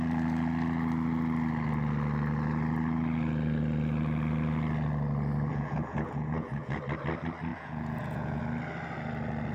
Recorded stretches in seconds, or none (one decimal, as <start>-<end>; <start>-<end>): 0.0-5.5; 6.8-7.5; 8.4-9.5